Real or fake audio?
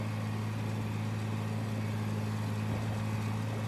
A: real